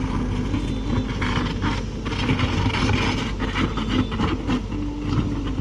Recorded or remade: recorded